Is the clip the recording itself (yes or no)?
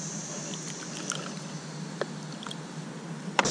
yes